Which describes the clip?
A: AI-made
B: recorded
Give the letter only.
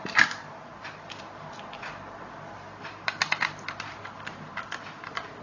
B